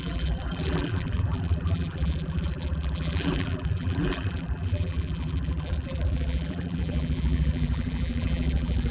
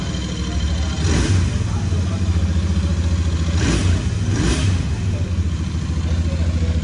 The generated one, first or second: first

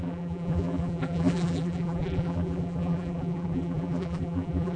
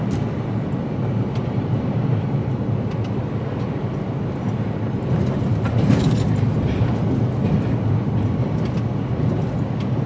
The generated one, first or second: first